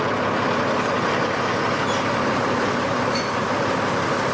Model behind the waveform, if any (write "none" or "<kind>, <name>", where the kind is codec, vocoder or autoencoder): none